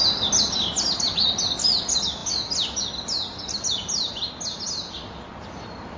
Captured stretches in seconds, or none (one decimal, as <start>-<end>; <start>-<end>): 0.0-6.0